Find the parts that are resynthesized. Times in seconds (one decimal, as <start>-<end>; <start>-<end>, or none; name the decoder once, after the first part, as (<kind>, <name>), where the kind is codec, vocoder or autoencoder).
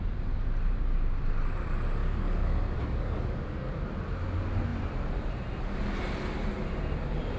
2.0-3.8 (codec, DAC)